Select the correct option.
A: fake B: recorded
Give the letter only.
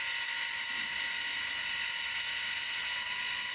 A